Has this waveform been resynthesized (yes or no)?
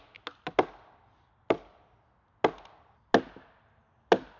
no